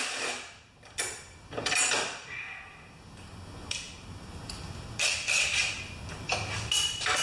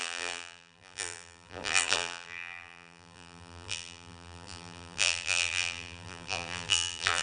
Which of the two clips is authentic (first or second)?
first